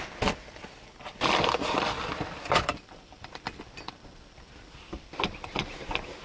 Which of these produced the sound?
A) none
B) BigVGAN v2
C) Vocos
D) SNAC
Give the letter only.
B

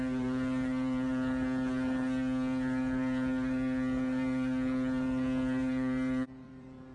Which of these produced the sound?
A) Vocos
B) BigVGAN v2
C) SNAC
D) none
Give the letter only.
B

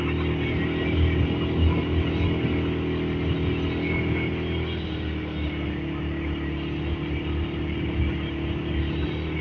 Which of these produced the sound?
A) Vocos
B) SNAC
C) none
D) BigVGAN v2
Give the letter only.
C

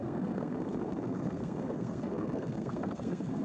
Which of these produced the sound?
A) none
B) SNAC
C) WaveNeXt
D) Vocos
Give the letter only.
B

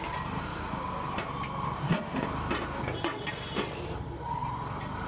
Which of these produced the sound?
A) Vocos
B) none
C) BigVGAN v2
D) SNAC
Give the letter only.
C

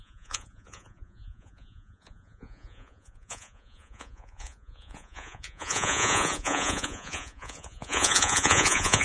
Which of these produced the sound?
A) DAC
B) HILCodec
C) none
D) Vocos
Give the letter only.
D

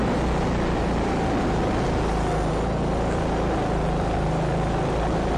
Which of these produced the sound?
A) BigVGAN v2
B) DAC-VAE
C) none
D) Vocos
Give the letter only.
C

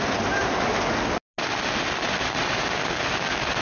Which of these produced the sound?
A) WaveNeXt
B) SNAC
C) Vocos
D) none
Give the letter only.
D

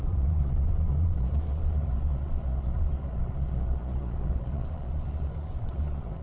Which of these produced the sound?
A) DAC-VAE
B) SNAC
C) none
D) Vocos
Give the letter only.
D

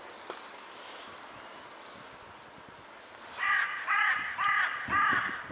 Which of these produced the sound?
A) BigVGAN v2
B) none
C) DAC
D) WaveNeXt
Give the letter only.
B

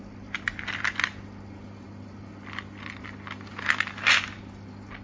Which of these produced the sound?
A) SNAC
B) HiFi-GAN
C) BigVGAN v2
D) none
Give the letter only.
D